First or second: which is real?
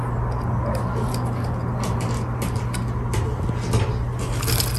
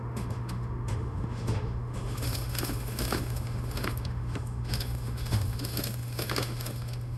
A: first